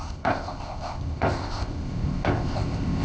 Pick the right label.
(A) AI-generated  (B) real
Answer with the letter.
A